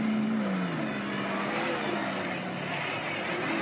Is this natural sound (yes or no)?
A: yes